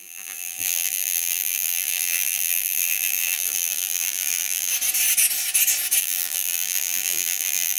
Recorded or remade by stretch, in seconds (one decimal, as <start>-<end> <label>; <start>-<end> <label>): 0.0-4.7 remade; 4.7-6.0 recorded; 6.0-7.8 remade